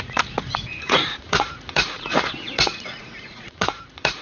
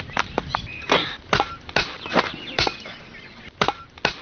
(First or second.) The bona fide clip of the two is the second